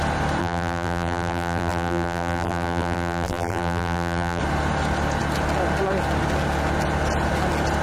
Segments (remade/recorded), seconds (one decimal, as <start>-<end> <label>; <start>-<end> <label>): 0.0-0.4 recorded; 0.4-4.4 remade; 4.4-7.8 recorded

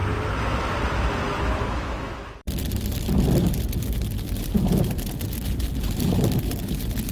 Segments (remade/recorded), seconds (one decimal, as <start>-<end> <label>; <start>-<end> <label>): 0.0-1.4 recorded; 1.4-2.6 remade; 2.6-7.1 recorded

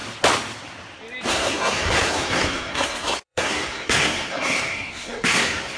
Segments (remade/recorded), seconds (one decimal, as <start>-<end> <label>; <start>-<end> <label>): 0.0-1.3 recorded; 1.3-5.8 remade

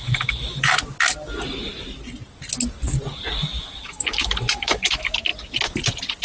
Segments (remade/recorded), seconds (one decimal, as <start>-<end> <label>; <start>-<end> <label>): 0.0-0.7 remade; 0.7-3.4 recorded; 3.4-5.3 remade; 5.3-6.2 recorded